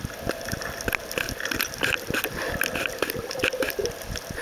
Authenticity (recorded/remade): recorded